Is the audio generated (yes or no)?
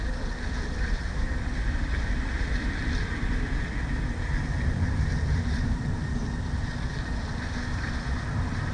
yes